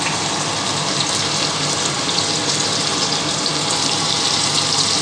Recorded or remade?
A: recorded